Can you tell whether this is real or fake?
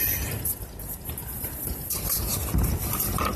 real